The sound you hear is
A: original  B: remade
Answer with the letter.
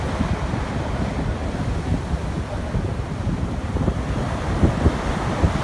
A